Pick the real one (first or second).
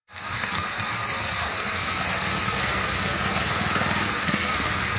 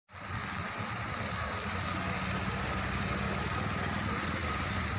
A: second